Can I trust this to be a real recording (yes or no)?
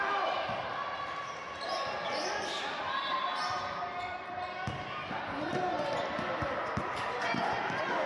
yes